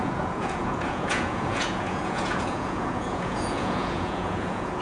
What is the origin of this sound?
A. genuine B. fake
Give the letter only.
B